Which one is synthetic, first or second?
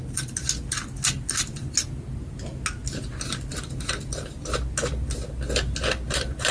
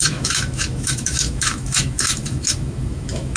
second